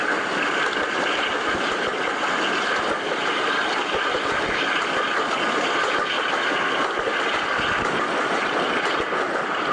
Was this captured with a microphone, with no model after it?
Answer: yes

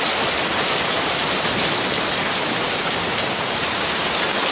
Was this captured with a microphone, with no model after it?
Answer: no